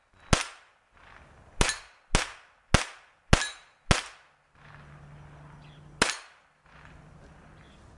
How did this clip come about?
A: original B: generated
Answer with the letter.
A